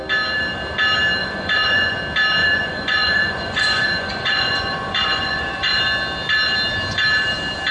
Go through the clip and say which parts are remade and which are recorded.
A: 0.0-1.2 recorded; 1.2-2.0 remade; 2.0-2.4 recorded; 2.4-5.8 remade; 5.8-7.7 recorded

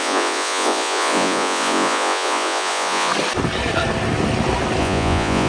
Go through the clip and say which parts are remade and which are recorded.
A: 0.0-3.1 remade; 3.1-4.8 recorded; 4.8-5.5 remade

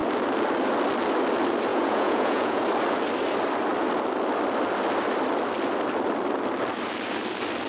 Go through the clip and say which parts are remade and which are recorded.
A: 0.0-1.7 recorded; 1.7-2.6 remade; 2.6-7.7 recorded

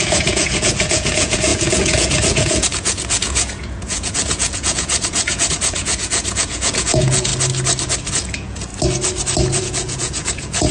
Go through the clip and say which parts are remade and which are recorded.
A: 0.0-7.3 remade; 7.3-8.1 recorded; 8.1-8.7 remade; 8.7-9.6 recorded; 9.6-10.7 remade

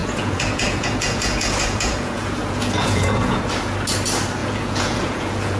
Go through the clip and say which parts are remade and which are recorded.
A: 0.0-3.4 remade; 3.4-4.4 recorded; 4.4-5.6 remade

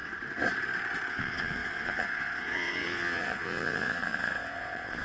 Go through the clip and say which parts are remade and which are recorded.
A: 0.0-1.1 recorded; 1.1-5.0 remade